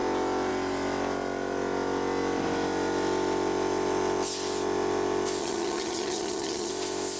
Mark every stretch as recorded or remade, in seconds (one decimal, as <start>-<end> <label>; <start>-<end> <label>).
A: 0.0-5.4 recorded; 5.4-6.7 remade; 6.7-7.2 recorded